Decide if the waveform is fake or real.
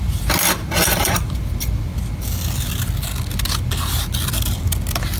real